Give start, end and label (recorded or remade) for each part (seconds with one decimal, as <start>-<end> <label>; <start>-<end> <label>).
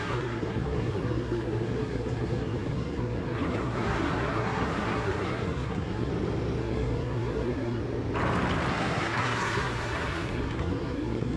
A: 0.0-6.1 remade; 6.1-6.6 recorded; 6.6-7.8 remade; 7.8-8.7 recorded; 8.7-11.4 remade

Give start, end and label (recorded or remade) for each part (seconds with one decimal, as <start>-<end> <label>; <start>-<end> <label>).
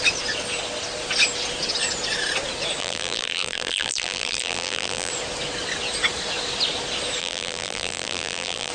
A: 0.0-2.8 recorded; 2.8-5.1 remade; 5.1-7.2 recorded; 7.2-8.7 remade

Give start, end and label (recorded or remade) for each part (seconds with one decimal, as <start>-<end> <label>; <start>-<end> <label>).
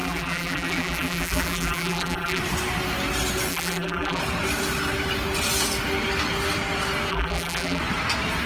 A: 0.0-2.4 remade; 2.4-3.5 recorded; 3.5-4.2 remade; 4.2-7.1 recorded; 7.1-7.8 remade; 7.8-8.5 recorded